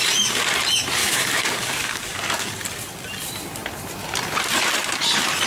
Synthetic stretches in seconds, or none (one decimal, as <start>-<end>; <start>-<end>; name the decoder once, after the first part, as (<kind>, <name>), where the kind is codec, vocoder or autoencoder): 1.0-2.5 (codec, DAC)